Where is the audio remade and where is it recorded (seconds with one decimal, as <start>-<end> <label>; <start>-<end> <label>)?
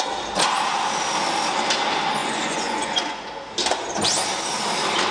0.0-2.2 recorded; 2.2-3.3 remade; 3.3-5.1 recorded